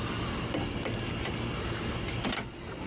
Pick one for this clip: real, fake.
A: real